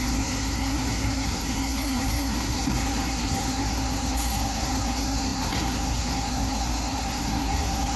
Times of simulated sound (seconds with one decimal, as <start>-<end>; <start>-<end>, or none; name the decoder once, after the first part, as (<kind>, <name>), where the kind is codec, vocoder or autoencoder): 0.0-8.0 (codec, SNAC)